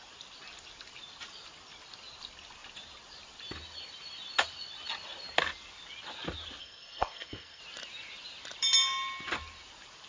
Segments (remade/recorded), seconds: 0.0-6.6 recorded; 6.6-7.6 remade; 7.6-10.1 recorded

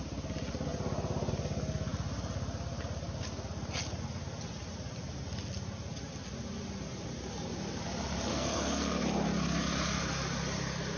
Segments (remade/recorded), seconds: 0.0-8.3 recorded; 8.3-9.0 remade; 9.0-11.0 recorded

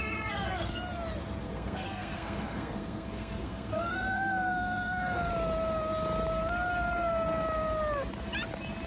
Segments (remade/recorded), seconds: 0.0-0.8 remade; 0.8-1.4 recorded; 1.4-5.3 remade; 5.3-8.9 recorded

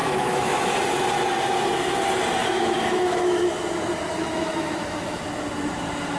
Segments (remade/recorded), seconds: 0.0-0.7 remade; 0.7-2.4 recorded; 2.4-3.5 remade; 3.5-4.1 recorded; 4.1-5.2 remade; 5.2-6.2 recorded

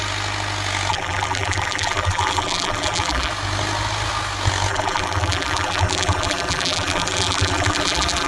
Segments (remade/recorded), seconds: 0.0-0.9 recorded; 0.9-3.3 remade; 3.3-4.7 recorded; 4.7-8.3 remade

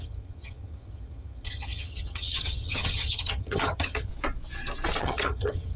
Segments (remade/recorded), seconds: 0.0-4.1 remade; 4.1-5.0 recorded; 5.0-5.8 remade

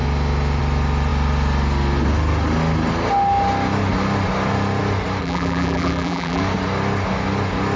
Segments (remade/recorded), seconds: 0.0-5.2 recorded; 5.2-6.4 remade; 6.4-7.8 recorded

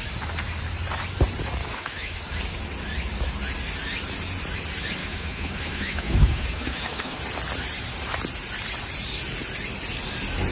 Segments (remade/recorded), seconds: 0.0-1.6 recorded; 1.6-2.2 remade; 2.2-5.0 recorded; 5.0-7.2 remade; 7.2-10.5 recorded